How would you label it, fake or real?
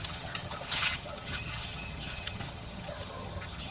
fake